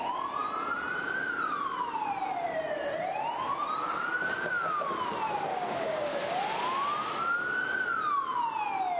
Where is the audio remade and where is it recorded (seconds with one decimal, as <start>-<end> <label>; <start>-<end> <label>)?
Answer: 0.0-5.5 recorded; 5.5-6.4 remade; 6.4-9.0 recorded